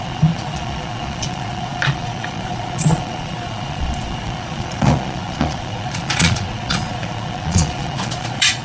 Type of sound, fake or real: fake